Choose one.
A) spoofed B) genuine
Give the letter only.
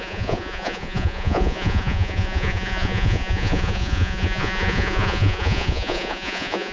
A